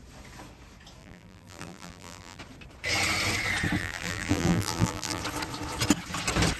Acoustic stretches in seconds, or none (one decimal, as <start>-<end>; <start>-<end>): 0.0-1.0; 2.4-3.8; 5.2-6.6